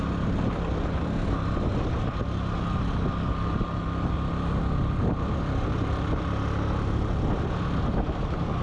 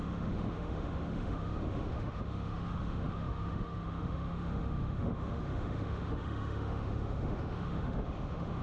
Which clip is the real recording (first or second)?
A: first